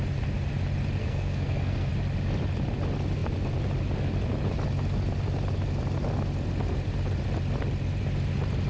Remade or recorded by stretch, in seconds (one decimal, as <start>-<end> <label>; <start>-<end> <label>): 0.0-1.0 recorded; 1.0-1.9 remade; 1.9-8.7 recorded